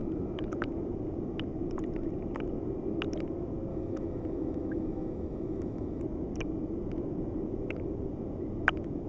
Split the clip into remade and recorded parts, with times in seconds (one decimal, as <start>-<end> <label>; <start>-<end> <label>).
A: 0.0-3.7 recorded; 3.7-6.0 remade; 6.0-9.1 recorded